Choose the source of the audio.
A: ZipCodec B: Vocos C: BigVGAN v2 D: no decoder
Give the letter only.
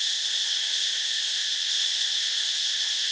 A